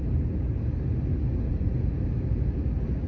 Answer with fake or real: real